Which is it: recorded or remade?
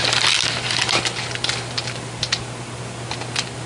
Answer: recorded